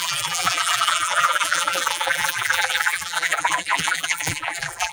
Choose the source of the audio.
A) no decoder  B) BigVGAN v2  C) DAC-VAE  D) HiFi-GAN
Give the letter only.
B